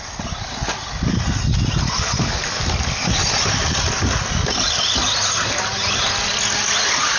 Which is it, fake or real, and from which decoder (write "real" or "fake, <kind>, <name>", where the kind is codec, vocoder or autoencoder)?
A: real